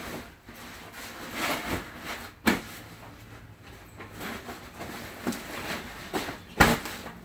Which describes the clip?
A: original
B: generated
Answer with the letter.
A